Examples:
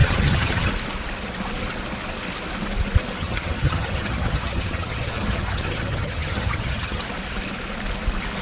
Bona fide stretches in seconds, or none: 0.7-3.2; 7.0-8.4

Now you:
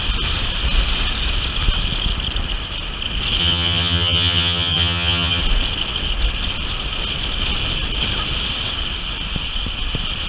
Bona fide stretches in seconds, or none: 0.0-3.4; 5.4-10.3

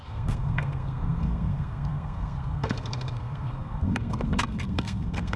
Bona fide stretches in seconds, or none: none